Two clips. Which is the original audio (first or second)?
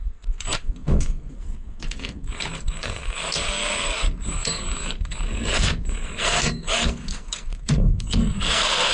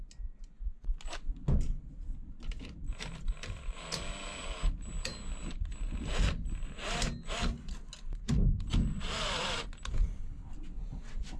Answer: second